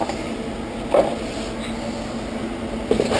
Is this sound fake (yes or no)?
no